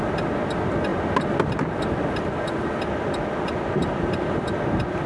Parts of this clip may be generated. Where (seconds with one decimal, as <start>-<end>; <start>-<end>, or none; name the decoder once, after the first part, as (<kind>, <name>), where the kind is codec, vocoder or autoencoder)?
none